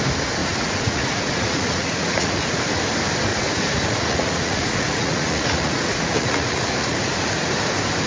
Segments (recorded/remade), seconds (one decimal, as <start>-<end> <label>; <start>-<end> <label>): 0.0-0.4 recorded; 0.4-2.6 remade; 2.6-3.3 recorded; 3.3-7.5 remade; 7.5-8.1 recorded